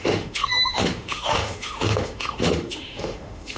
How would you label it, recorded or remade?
remade